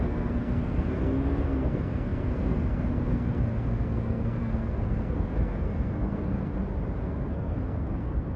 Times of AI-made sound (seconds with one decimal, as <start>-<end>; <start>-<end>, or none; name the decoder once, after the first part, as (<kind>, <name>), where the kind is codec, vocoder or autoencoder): 0.0-6.5 (codec, SNAC); 7.0-8.4